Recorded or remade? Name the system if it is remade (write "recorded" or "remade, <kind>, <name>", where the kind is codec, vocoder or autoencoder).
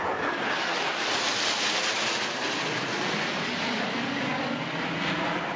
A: recorded